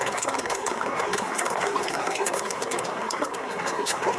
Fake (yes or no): yes